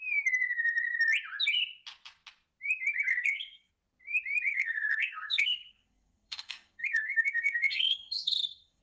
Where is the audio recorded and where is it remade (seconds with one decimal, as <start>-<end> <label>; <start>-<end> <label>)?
0.0-3.1 recorded; 3.1-3.7 remade; 3.7-4.5 recorded; 4.5-8.8 remade